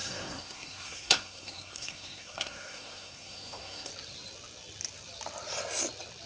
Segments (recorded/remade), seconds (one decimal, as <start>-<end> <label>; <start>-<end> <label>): 0.0-3.9 remade; 3.9-6.3 recorded